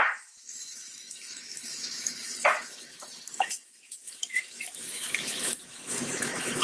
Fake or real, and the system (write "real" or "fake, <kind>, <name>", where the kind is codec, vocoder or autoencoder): fake, autoencoder, DAC-VAE